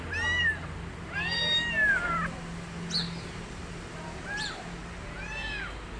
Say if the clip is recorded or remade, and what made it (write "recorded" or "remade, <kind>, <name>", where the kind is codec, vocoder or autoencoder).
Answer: recorded